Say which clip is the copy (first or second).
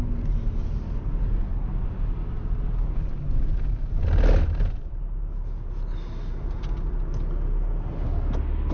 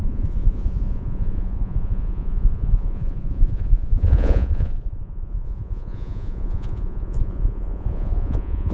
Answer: second